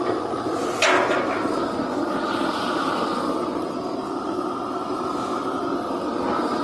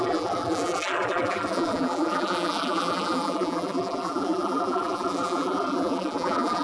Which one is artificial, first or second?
second